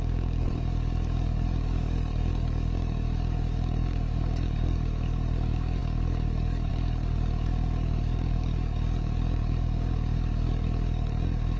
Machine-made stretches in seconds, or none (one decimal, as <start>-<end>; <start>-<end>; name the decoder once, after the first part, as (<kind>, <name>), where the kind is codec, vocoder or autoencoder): 0.0-11.6 (codec, DAC)